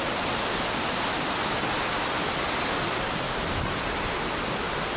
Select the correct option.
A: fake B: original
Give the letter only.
B